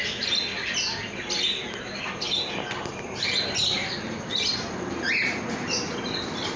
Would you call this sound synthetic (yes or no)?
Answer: no